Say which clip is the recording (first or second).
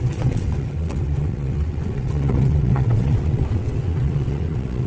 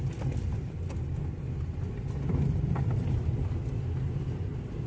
second